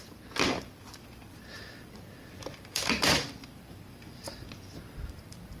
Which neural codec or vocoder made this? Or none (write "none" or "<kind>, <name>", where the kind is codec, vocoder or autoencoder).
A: vocoder, BigVGAN v2